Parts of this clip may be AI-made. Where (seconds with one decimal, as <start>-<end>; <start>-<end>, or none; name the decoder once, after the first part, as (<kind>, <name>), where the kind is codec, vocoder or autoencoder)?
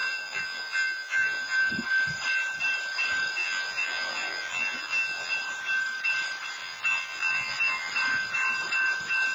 0.0-1.7 (vocoder, BigVGAN v2); 3.4-5.3; 6.6-7.9